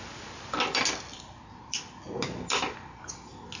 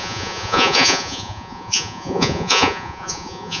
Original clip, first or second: first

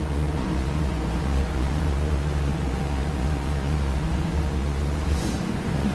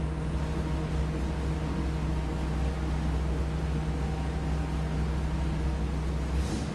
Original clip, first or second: second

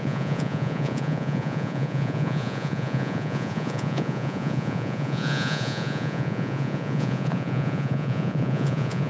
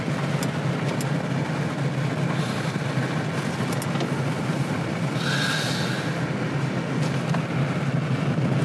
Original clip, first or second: second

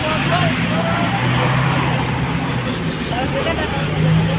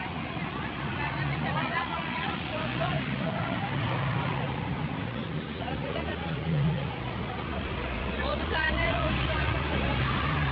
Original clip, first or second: first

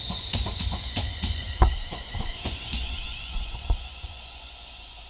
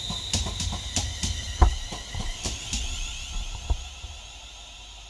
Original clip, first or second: second